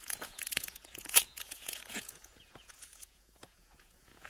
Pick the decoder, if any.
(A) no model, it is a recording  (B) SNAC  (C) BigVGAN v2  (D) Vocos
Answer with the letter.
D